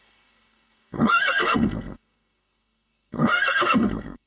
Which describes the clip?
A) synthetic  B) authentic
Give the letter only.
A